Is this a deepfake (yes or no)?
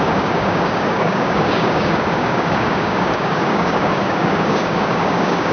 yes